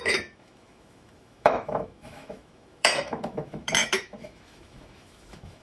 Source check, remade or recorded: remade